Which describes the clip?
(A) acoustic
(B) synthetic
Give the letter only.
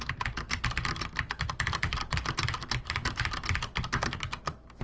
A